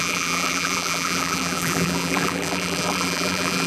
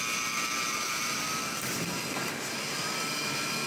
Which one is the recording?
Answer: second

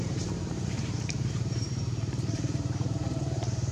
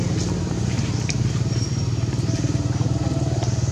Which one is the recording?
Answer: second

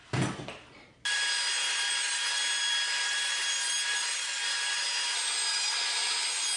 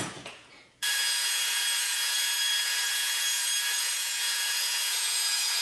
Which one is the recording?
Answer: first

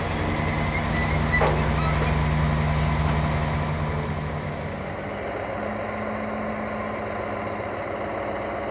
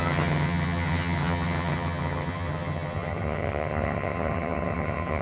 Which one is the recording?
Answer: first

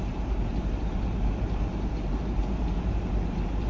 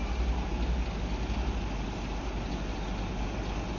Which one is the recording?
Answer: second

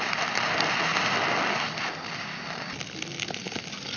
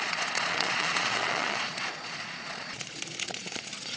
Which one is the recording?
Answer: first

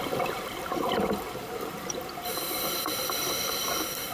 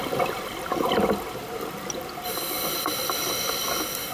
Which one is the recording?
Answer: second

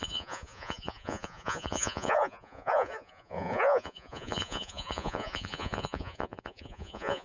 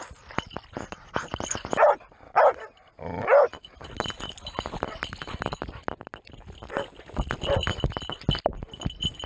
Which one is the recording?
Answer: second